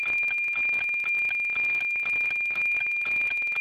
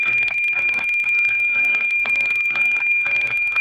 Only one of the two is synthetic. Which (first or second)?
second